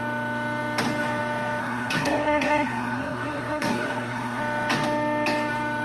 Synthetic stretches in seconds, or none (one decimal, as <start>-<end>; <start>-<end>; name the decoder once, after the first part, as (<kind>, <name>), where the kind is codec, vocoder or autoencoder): 1.6-4.4 (codec, SNAC)